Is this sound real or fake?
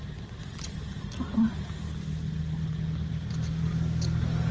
real